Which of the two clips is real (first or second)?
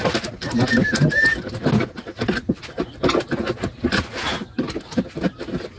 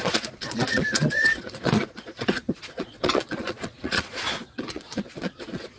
first